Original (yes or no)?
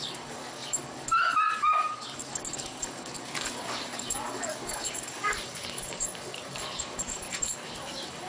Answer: no